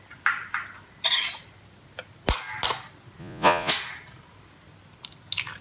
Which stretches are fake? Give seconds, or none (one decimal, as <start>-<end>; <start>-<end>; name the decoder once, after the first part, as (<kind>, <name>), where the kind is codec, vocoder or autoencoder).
3.2-3.7 (vocoder, Vocos)